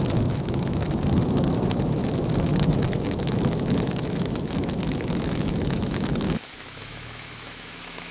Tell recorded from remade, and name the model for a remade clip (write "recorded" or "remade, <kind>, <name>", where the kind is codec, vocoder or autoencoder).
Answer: remade, autoencoder, DAC-VAE